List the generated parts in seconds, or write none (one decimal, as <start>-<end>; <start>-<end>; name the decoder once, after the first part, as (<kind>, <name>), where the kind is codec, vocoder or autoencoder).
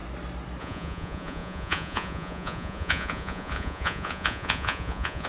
0.6-5.3 (vocoder, Vocos)